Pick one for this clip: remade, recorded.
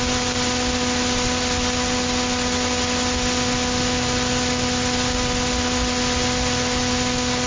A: recorded